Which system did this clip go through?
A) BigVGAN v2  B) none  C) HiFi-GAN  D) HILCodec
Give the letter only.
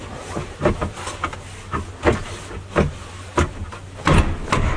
B